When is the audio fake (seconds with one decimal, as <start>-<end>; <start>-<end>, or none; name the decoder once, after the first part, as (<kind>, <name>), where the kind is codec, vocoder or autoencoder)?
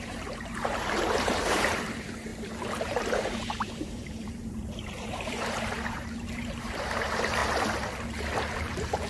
0.0-2.3 (vocoder, BigVGAN v2); 2.8-7.4; 8.7-9.1